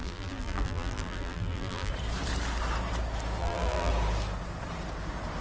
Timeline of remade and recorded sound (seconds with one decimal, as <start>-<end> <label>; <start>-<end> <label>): 0.0-1.9 remade; 1.9-3.4 recorded; 3.4-3.9 remade; 3.9-5.4 recorded